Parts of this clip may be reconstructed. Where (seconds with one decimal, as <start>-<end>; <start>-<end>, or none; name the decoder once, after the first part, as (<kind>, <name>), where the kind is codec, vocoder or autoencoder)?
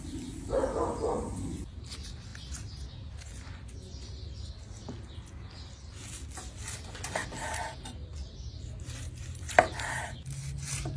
none